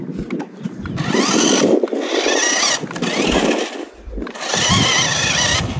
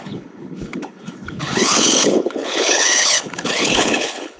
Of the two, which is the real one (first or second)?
first